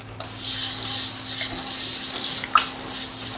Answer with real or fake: real